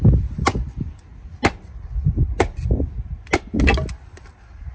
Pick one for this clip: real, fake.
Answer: real